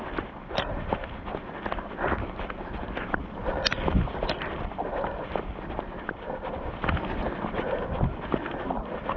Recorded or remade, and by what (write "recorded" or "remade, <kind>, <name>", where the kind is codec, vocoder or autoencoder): recorded